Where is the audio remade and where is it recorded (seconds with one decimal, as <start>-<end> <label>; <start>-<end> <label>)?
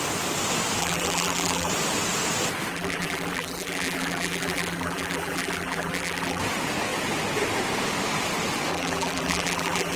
0.0-0.8 recorded; 0.8-1.7 remade; 1.7-2.7 recorded; 2.7-6.4 remade; 6.4-8.7 recorded; 8.7-10.0 remade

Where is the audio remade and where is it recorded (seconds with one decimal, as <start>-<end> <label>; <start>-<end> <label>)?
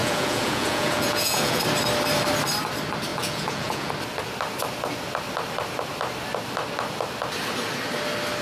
0.0-1.6 remade; 1.6-3.1 recorded; 3.1-3.9 remade; 3.9-8.4 recorded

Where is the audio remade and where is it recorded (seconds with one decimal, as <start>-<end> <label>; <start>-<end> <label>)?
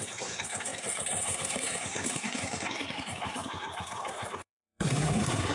0.0-5.5 remade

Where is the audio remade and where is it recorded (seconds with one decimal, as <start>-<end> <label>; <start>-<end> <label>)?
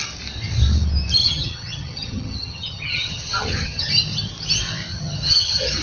0.0-1.2 recorded; 1.2-3.9 remade; 3.9-4.9 recorded; 4.9-5.8 remade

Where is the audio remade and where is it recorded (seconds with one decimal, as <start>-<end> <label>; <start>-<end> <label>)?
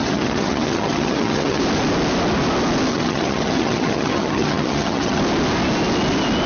0.0-1.6 remade; 1.6-2.9 recorded; 2.9-5.2 remade; 5.2-6.5 recorded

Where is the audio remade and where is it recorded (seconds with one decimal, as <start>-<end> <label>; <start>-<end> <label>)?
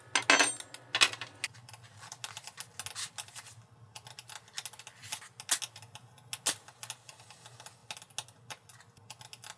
0.0-9.6 recorded